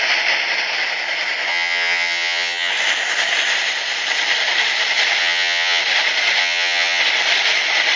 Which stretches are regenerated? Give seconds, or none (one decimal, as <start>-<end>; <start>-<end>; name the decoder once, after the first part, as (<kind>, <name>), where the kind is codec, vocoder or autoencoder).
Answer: 1.5-2.7 (vocoder, HiFi-GAN); 5.2-5.8; 6.4-7.0